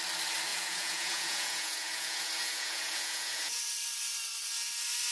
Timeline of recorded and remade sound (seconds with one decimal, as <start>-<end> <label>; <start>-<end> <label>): 0.0-0.5 recorded; 0.5-3.6 remade; 3.6-5.1 recorded